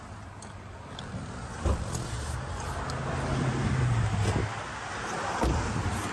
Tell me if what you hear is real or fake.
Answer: real